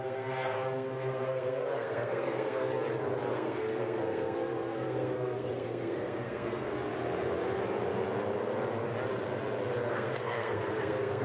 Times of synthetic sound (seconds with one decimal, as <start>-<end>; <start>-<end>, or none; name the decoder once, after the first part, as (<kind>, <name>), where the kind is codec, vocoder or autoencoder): 0.0-2.7 (codec, SNAC); 3.3-6.7; 9.9-11.2